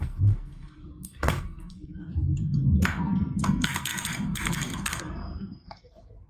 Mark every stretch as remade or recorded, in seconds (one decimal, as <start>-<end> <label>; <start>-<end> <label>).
0.0-6.3 remade